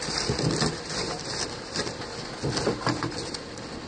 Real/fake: real